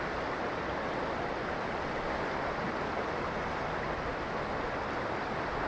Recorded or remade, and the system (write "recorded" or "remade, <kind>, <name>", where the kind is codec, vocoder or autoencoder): recorded